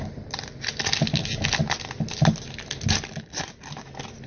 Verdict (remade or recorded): recorded